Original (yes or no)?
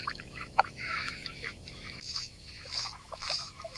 no